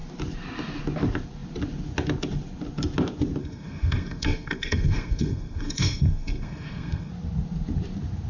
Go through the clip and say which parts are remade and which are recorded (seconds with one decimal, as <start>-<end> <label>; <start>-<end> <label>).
0.0-3.4 recorded; 3.4-7.1 remade; 7.1-8.3 recorded